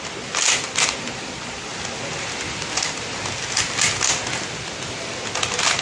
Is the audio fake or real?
real